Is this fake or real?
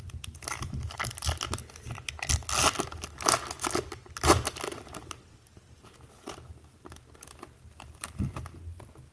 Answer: real